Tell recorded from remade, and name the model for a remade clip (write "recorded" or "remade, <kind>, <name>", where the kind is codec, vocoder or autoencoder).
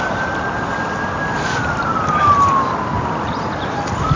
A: recorded